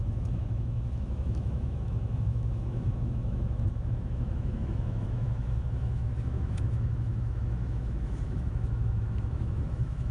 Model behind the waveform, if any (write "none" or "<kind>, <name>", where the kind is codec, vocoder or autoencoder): autoencoder, DAC-VAE